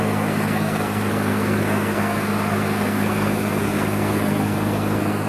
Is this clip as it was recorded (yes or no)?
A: no